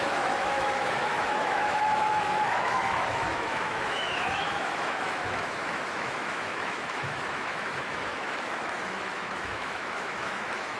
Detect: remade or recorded remade